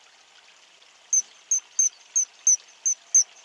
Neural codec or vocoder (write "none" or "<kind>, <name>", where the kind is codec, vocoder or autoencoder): none